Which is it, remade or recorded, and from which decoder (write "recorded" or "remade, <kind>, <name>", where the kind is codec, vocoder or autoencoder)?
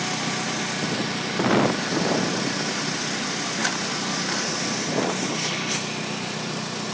recorded